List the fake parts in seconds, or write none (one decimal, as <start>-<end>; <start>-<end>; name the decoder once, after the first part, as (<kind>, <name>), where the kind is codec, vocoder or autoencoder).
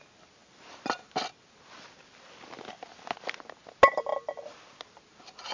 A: 0.4-1.6 (vocoder, BigVGAN v2); 4.1-5.0